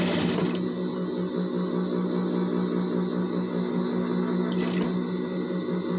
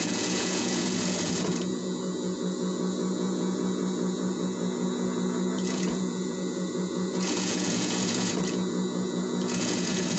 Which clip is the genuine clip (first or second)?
first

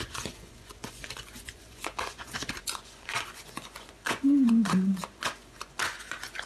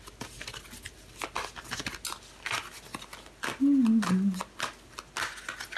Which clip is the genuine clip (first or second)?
second